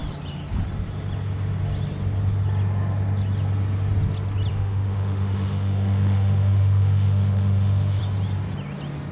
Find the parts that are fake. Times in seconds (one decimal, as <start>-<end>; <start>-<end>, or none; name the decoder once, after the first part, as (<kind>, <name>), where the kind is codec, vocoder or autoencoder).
4.5-8.0 (autoencoder, DAC-VAE)